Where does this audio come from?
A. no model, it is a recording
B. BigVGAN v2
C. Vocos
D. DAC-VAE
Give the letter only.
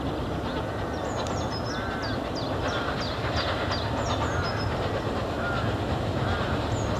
A